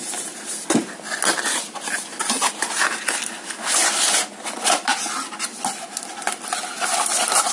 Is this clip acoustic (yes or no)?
yes